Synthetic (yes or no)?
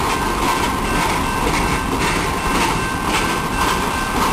no